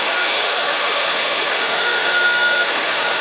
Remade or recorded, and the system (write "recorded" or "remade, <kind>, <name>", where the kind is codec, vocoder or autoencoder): remade, autoencoder, DAC-VAE